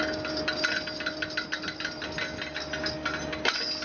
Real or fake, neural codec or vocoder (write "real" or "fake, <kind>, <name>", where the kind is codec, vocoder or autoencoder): real